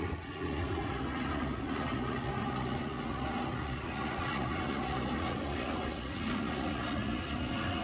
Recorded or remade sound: remade